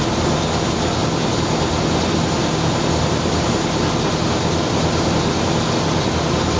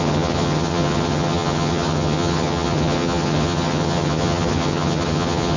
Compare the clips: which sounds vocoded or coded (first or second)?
second